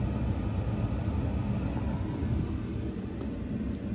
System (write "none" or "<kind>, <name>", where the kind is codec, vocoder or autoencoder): none